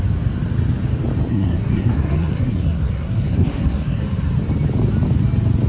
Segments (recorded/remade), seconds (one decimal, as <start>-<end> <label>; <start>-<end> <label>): 0.0-1.3 recorded; 1.3-4.0 remade; 4.0-5.7 recorded